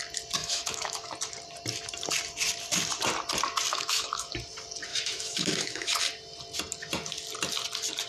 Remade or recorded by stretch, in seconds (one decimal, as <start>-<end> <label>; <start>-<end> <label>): 0.0-0.4 recorded; 0.4-1.1 remade; 1.1-3.7 recorded; 3.7-4.3 remade; 4.3-4.9 recorded; 4.9-6.0 remade; 6.0-8.1 recorded